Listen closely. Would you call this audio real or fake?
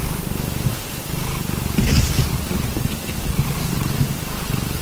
real